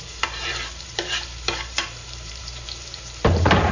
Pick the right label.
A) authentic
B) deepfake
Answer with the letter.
B